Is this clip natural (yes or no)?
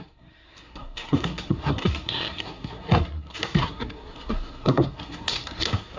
no